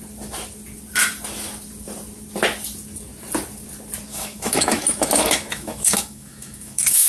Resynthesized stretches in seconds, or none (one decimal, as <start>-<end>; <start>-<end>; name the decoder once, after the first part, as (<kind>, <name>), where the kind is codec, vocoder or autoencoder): 4.1-7.1 (autoencoder, DAC-VAE)